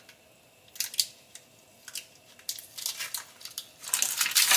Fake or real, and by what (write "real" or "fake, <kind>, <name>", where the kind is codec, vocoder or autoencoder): real